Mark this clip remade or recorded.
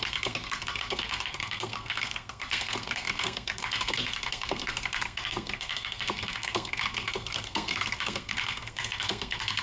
remade